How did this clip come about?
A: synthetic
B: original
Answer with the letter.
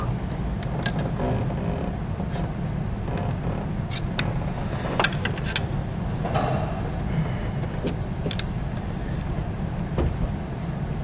B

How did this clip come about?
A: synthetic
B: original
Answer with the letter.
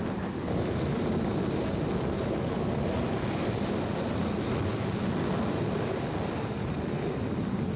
B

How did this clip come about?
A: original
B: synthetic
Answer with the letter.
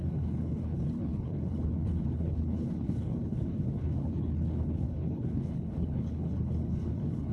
B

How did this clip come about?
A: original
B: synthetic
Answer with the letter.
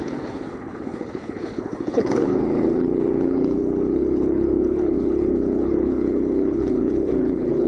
B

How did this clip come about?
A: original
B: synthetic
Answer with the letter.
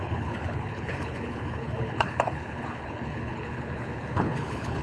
B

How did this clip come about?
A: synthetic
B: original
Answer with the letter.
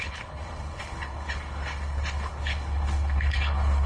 A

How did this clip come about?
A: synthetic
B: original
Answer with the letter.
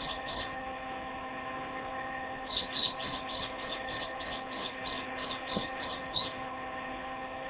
A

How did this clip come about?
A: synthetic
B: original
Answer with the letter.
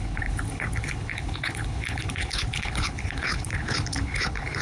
A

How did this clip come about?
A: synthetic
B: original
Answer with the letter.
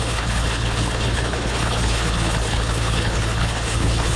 A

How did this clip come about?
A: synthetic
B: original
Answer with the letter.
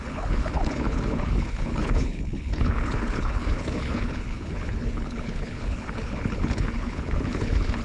A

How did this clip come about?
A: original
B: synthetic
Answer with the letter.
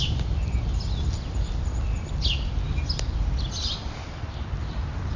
A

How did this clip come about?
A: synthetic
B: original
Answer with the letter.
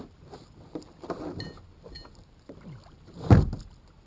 B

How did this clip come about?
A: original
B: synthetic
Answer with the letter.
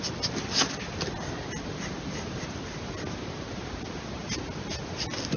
A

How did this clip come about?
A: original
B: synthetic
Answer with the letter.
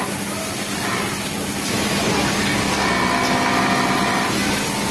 A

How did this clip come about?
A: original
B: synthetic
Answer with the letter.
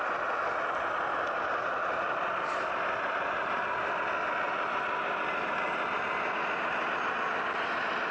A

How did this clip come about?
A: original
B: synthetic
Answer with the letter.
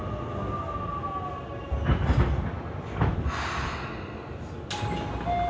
A